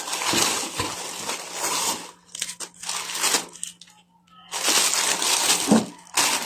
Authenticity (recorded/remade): recorded